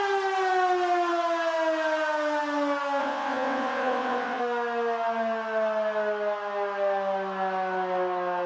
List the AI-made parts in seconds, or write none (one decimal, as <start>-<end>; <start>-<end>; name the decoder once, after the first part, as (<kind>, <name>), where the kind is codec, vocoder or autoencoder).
3.0-4.4 (vocoder, WaveNeXt)